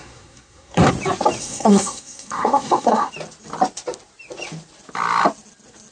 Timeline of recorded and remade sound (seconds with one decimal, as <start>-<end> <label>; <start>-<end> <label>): 0.0-0.9 remade; 0.9-1.4 recorded; 1.4-3.1 remade; 3.1-5.9 recorded